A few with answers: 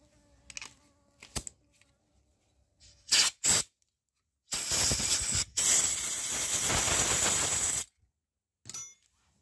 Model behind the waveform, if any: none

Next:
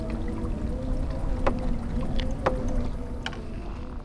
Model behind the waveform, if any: none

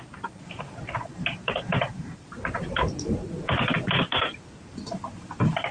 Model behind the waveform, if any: vocoder, BigVGAN v2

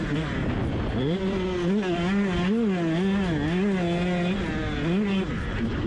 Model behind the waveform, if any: none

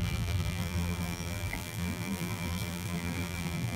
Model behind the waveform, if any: vocoder, BigVGAN v2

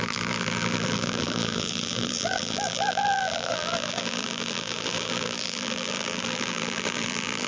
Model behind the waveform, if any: vocoder, BigVGAN v2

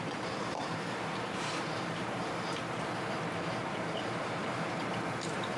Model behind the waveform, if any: vocoder, BigVGAN v2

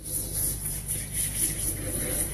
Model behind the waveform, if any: none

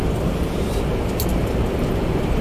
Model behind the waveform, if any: vocoder, BigVGAN v2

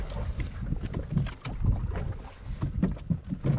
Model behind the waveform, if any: none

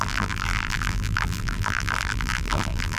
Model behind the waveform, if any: vocoder, BigVGAN v2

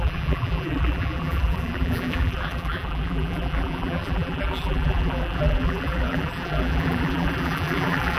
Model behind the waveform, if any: vocoder, BigVGAN v2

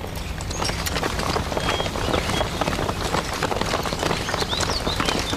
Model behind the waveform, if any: none